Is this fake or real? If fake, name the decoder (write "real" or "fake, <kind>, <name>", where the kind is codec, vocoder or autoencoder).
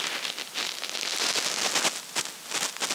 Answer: real